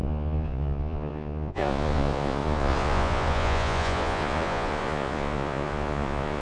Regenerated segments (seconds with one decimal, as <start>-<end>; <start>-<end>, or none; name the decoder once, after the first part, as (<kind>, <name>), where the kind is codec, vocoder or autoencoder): 0.0-6.4 (vocoder, Vocos)